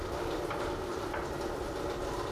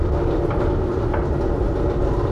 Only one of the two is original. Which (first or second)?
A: second